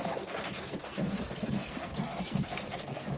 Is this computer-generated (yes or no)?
yes